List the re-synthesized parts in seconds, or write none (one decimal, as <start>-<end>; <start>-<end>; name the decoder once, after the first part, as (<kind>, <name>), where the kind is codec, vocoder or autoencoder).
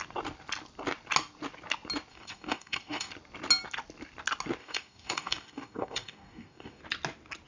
2.1-3.1 (codec, DAC); 4.6-6.8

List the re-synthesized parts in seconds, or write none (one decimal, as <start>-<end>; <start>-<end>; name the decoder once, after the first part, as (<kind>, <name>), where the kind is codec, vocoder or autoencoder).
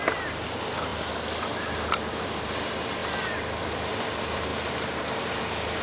0.0-0.9 (vocoder, BigVGAN v2); 1.9-4.5; 5.0-5.8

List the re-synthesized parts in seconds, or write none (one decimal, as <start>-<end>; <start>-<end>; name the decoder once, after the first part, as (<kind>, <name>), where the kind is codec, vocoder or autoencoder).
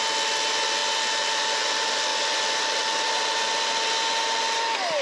0.8-1.4 (vocoder, BigVGAN v2)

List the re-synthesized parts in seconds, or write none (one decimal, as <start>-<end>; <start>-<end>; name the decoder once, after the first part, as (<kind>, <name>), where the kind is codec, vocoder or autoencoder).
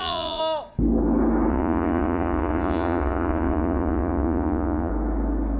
0.0-0.4 (vocoder, Vocos); 1.5-4.9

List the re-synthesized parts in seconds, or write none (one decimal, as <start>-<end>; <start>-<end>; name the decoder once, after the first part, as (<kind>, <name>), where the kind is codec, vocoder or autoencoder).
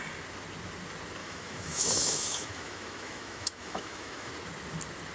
1.2-4.3 (autoencoder, DAC-VAE)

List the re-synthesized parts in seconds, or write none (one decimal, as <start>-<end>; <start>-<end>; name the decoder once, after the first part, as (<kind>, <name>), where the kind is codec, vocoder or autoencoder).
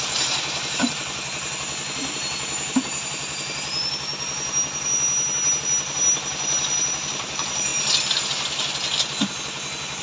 0.0-4.1 (vocoder, BigVGAN v2); 5.6-7.7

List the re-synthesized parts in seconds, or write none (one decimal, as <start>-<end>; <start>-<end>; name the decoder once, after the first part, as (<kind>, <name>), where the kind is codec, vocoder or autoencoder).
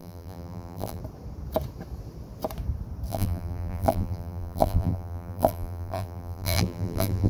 0.0-1.0 (vocoder, BigVGAN v2); 3.1-7.3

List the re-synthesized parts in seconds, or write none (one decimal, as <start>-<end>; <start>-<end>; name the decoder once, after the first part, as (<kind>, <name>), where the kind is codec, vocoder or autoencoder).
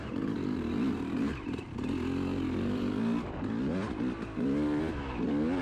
0.0-1.7 (vocoder, BigVGAN v2); 2.3-2.9